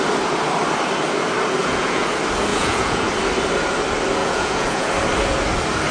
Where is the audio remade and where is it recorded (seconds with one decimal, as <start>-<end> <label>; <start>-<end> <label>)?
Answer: 0.0-1.6 recorded; 1.6-2.1 remade; 2.1-2.5 recorded; 2.5-3.1 remade; 3.1-4.2 recorded; 4.2-4.9 remade; 4.9-5.9 recorded